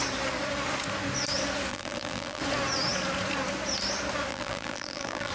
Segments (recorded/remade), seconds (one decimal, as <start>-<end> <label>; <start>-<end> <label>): 0.0-1.7 recorded; 1.7-2.4 remade; 2.4-4.3 recorded; 4.3-5.3 remade